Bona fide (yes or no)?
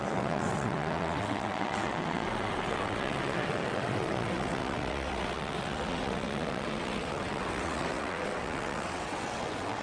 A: no